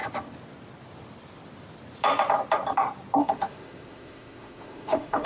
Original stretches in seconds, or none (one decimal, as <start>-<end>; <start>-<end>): 0.0-3.2